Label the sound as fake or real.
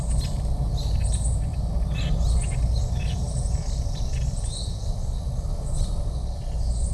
real